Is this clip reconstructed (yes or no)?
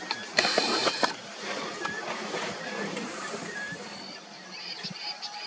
yes